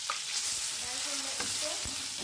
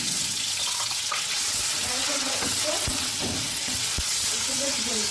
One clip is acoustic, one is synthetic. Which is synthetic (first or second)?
second